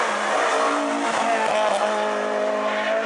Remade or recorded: recorded